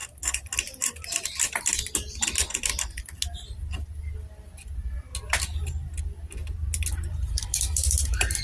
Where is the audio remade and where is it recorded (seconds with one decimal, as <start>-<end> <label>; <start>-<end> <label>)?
0.0-1.6 remade; 1.6-6.4 recorded; 6.4-8.4 remade